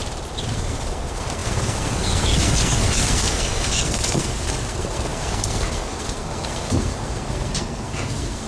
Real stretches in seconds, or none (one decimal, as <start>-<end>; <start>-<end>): 0.0-0.5